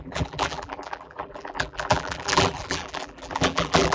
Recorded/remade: remade